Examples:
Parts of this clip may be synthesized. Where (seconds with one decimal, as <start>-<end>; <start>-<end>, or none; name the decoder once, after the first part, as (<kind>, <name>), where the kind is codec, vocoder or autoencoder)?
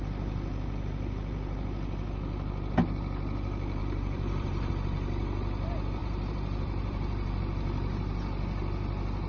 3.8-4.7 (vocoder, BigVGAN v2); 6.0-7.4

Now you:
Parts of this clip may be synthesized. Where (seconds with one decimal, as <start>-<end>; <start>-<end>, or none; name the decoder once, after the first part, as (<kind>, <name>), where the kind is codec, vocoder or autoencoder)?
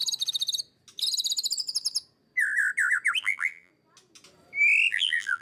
3.2-3.7 (vocoder, BigVGAN v2); 4.9-5.4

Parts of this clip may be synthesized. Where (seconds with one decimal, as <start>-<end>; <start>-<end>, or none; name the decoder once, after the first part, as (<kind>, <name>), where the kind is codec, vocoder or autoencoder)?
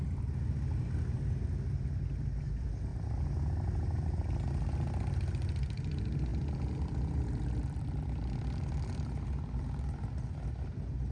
none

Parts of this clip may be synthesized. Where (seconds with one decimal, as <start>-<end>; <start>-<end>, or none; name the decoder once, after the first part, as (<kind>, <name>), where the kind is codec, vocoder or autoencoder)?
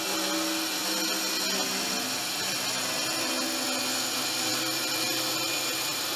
4.5-6.2 (vocoder, BigVGAN v2)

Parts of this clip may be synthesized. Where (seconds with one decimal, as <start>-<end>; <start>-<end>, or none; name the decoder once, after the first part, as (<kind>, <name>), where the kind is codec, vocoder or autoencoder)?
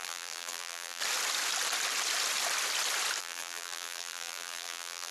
0.0-1.0 (vocoder, BigVGAN v2); 3.2-5.1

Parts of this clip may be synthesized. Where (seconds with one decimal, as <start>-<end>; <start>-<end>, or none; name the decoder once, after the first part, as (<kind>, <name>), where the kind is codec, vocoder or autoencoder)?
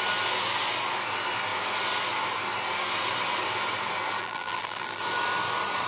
4.2-5.0 (vocoder, BigVGAN v2)